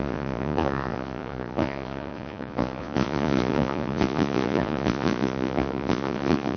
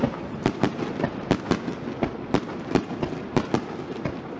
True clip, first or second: second